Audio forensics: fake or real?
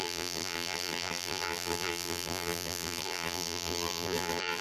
fake